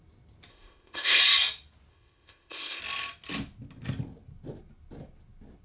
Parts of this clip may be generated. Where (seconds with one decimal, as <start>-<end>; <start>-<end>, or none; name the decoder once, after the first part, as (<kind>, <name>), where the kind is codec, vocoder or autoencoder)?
0.5-1.2 (codec, ZipCodec); 1.9-2.8